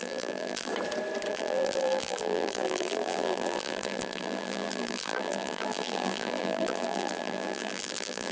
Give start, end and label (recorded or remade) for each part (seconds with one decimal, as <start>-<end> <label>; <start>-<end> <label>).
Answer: 0.0-0.7 remade; 0.7-1.3 recorded; 1.3-8.3 remade